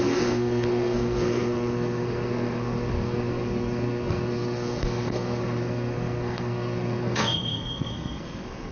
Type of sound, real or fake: fake